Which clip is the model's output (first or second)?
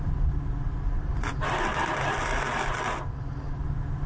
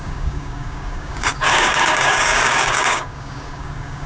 second